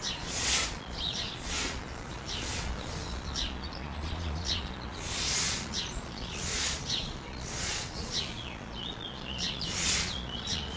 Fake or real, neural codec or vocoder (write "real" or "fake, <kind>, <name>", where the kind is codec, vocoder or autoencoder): fake, vocoder, Vocos